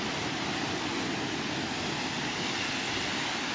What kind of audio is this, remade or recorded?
recorded